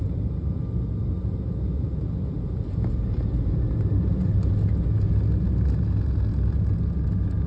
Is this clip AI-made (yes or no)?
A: no